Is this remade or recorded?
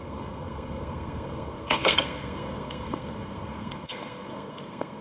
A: remade